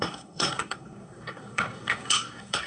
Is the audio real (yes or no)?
no